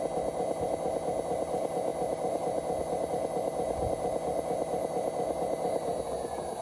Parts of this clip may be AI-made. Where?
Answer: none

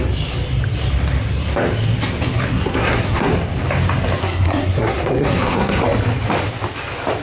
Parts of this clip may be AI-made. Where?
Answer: 2.5-3.3 (codec, SNAC); 4.2-5.8

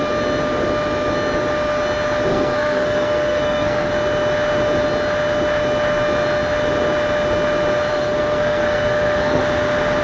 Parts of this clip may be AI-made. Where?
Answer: 2.3-3.9 (codec, SNAC); 7.9-9.4

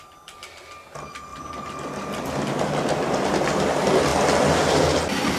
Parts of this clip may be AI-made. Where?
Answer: none